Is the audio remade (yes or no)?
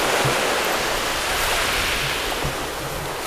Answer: no